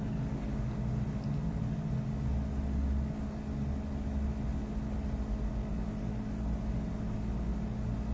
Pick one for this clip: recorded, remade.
recorded